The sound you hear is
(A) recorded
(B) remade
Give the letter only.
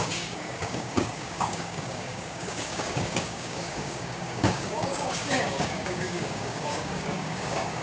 B